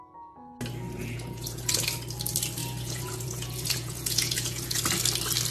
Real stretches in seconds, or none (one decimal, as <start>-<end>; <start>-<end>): 0.0-1.0; 1.8-2.6; 4.8-5.5